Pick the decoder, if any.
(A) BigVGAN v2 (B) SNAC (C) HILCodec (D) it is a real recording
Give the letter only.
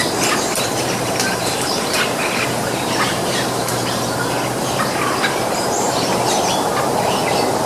A